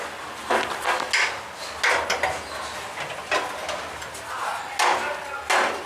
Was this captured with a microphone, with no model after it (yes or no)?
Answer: yes